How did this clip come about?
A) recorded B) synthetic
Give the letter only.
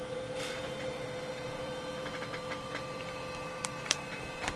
B